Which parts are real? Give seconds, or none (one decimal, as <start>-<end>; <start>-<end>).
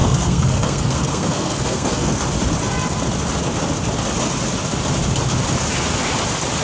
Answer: 2.1-6.6